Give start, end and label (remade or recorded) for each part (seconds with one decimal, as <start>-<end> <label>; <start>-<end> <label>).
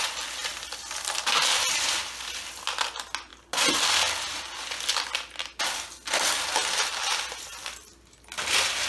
0.0-8.9 recorded